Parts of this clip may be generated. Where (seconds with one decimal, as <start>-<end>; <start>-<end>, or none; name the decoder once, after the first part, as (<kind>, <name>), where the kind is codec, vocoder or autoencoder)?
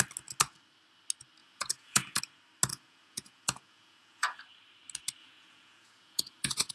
1.4-2.2 (vocoder, Vocos); 2.7-4.4; 5.2-6.7